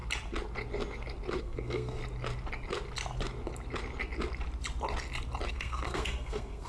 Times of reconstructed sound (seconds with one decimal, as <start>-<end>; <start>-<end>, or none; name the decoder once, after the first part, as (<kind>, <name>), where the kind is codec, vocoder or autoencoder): 1.4-2.0 (codec, SNAC); 5.5-6.7